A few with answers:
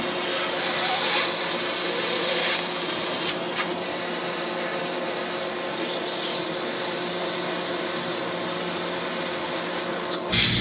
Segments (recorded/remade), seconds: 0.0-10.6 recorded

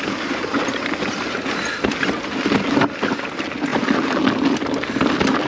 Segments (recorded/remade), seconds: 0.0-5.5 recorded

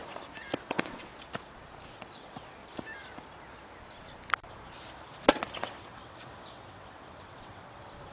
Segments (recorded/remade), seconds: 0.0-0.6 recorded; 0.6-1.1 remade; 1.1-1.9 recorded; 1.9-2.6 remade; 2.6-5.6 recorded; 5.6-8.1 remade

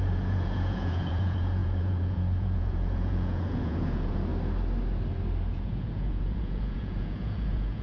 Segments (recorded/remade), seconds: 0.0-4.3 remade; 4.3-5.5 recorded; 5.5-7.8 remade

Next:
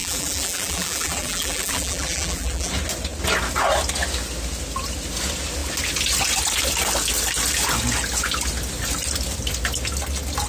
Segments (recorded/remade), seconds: 0.0-2.7 remade; 2.7-10.5 recorded